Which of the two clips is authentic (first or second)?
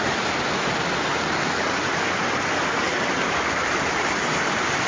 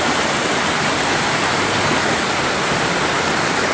first